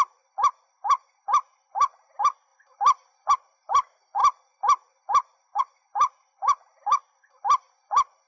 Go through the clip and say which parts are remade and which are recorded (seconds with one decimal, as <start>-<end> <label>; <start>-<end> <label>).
0.0-8.3 recorded